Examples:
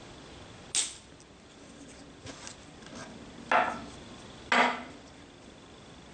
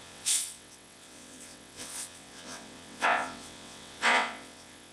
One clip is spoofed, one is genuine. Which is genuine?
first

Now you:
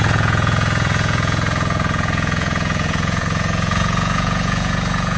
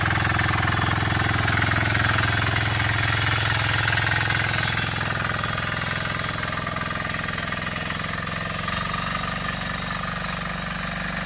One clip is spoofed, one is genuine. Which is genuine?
second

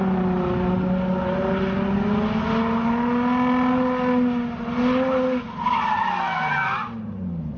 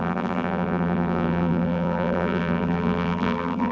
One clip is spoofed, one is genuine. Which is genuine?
first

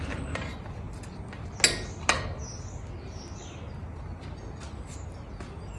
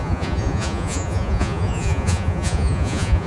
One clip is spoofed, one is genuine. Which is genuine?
first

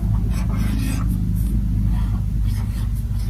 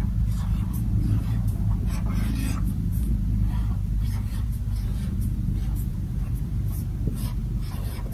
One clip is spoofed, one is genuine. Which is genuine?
first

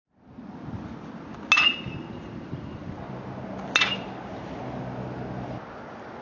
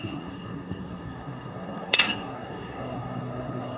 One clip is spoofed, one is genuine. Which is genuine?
first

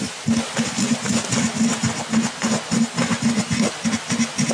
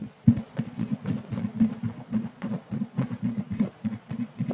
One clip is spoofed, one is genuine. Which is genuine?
first